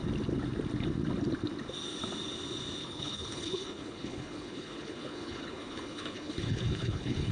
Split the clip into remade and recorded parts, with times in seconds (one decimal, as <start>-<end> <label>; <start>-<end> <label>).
0.0-2.8 recorded; 2.8-7.3 remade